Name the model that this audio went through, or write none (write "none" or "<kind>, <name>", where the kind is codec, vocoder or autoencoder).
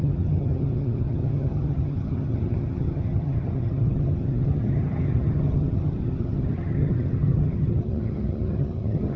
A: vocoder, HiFi-GAN